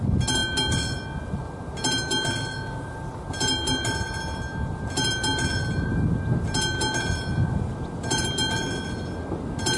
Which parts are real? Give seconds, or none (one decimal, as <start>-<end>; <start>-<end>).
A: 0.0-9.8